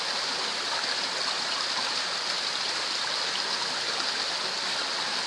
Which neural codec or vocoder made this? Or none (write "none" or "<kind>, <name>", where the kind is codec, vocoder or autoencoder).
none